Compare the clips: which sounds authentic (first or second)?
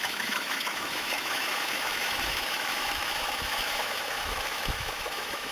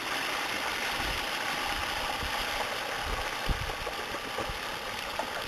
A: second